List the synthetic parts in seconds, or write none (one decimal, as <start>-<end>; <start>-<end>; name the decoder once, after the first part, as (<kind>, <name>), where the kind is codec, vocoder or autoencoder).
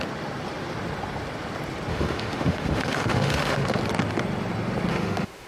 1.9-3.8 (autoencoder, DAC-VAE); 4.9-5.5